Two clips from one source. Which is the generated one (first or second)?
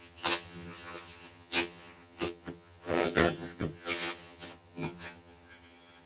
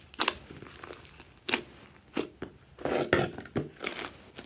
first